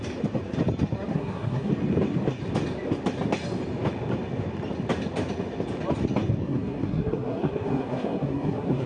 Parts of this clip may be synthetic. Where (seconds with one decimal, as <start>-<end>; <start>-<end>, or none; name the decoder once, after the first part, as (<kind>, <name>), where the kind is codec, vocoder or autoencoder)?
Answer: 1.1-1.7 (codec, SNAC); 6.4-8.9